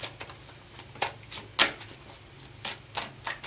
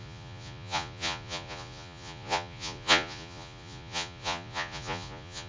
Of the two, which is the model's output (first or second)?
second